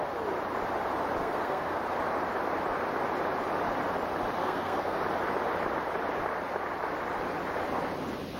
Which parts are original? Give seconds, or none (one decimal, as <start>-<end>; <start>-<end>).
0.0-1.2; 1.8-4.4; 5.0-8.4